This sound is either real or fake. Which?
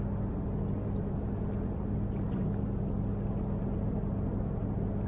real